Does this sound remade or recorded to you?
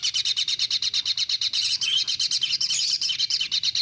recorded